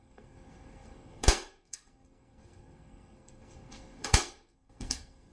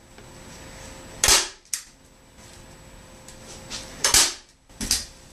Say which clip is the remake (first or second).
first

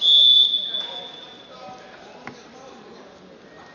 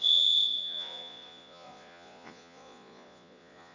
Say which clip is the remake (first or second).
second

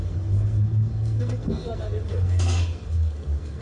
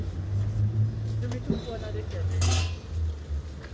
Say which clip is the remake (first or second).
first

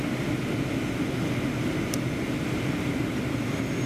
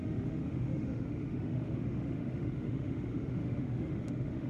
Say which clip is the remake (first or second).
second